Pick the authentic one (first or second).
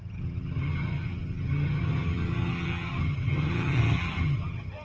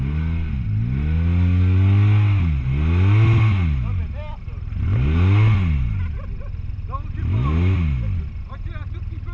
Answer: second